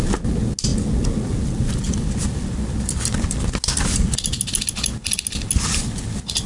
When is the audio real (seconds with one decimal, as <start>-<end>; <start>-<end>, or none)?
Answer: 0.0-6.5